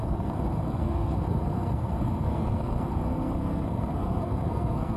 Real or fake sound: fake